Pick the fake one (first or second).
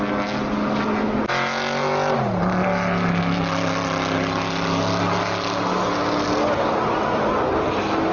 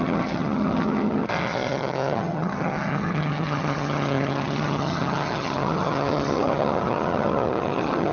second